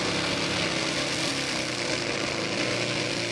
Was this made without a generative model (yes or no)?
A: yes